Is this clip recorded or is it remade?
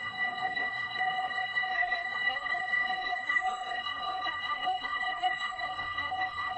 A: remade